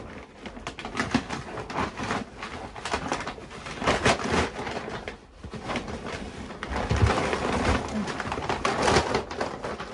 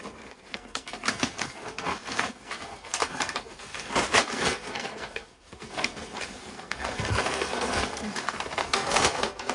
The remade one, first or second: second